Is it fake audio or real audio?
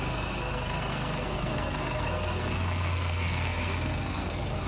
fake